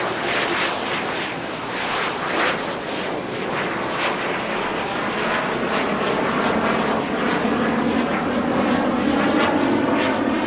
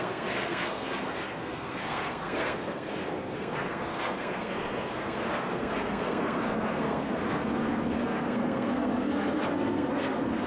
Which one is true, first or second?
first